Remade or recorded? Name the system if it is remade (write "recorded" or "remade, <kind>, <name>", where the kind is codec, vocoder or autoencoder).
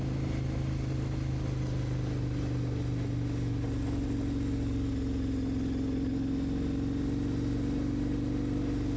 recorded